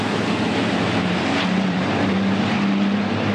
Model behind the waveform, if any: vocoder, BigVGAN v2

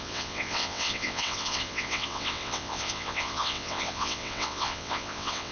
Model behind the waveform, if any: vocoder, WaveNeXt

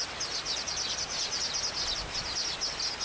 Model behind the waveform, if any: none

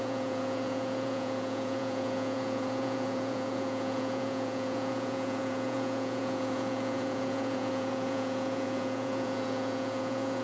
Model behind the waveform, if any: vocoder, Vocos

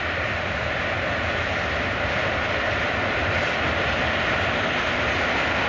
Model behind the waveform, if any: none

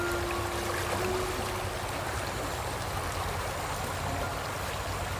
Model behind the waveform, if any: none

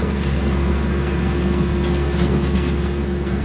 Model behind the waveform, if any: codec, SNAC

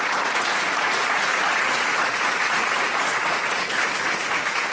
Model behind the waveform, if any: vocoder, Vocos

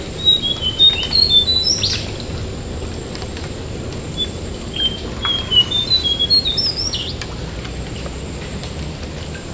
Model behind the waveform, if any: none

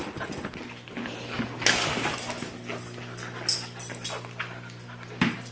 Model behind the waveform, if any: none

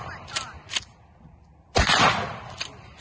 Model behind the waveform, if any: none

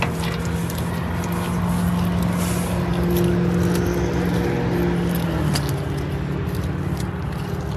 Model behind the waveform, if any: none